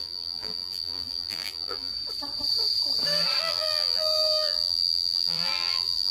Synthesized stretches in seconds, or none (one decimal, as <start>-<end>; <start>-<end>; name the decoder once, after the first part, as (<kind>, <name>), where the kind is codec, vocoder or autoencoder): 0.0-1.9 (vocoder, BigVGAN v2); 3.4-6.1